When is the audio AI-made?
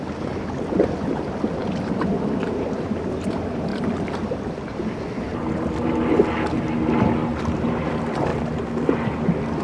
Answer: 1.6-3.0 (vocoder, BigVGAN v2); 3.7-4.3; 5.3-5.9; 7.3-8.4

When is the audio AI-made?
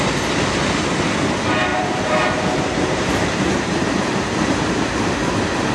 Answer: 1.7-5.1 (vocoder, BigVGAN v2)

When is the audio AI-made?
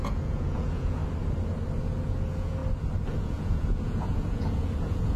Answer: 0.0-1.0 (vocoder, Vocos); 1.8-2.6; 3.1-5.2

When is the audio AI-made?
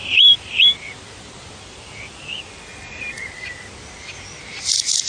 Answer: none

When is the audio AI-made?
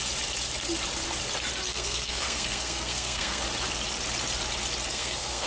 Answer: 1.7-3.4 (codec, SNAC); 4.9-5.5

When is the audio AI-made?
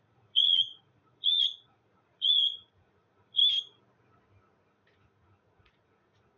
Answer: 0.0-3.4 (vocoder, Vocos); 4.7-6.4